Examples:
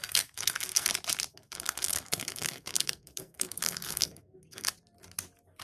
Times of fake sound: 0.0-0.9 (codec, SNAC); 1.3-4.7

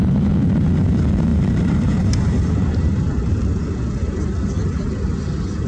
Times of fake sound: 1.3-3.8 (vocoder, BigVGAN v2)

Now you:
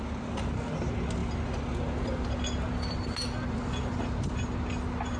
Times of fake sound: none